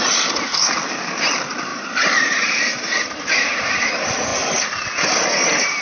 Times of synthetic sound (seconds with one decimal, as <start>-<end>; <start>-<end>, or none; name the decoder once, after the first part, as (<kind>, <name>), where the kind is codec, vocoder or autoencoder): 1.7-3.5 (vocoder, BigVGAN v2)

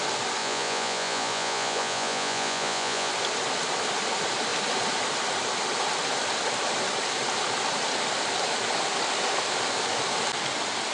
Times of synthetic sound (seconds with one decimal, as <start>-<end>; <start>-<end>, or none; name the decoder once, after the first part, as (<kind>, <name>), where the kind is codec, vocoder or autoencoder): 0.4-3.1 (vocoder, Vocos)